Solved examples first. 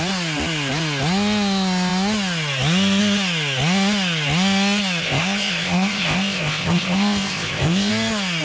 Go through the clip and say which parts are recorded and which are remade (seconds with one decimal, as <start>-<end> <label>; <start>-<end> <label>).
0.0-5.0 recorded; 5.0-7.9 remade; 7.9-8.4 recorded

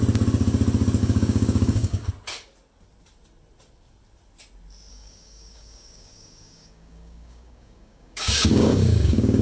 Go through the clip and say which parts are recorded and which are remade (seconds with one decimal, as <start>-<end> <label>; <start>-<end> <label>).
0.0-1.0 recorded; 1.0-2.1 remade; 2.1-4.9 recorded; 4.9-9.4 remade

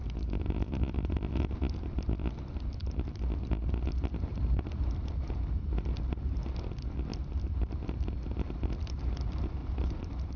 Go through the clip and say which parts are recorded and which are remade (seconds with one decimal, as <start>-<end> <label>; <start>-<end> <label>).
0.0-4.3 recorded; 4.3-5.4 remade; 5.4-9.6 recorded; 9.6-10.4 remade

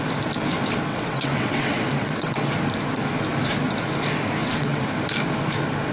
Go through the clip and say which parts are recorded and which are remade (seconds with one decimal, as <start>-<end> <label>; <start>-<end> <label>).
0.0-0.9 recorded; 0.9-2.5 remade; 2.5-4.4 recorded; 4.4-4.9 remade; 4.9-5.9 recorded

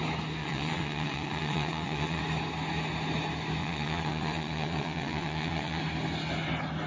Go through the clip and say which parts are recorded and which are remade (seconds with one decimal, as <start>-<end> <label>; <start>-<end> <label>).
0.0-0.4 recorded; 0.4-2.2 remade; 2.2-3.6 recorded; 3.6-5.8 remade; 5.8-6.9 recorded

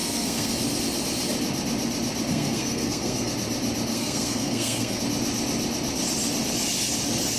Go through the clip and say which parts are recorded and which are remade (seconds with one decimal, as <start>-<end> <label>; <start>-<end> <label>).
0.0-0.5 remade; 0.5-2.3 recorded; 2.3-3.3 remade; 3.3-3.9 recorded; 3.9-5.0 remade; 5.0-7.4 recorded